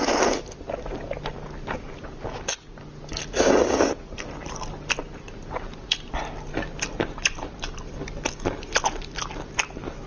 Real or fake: real